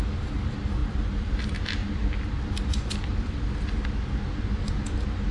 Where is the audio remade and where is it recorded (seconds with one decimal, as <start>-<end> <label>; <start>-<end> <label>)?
0.0-0.8 recorded; 0.8-1.4 remade; 1.4-1.8 recorded; 1.8-3.5 remade; 3.5-5.3 recorded